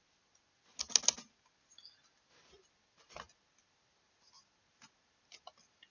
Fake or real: real